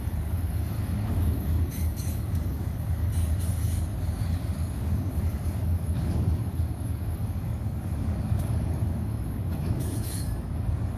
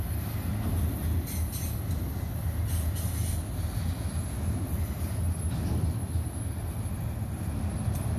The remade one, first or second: first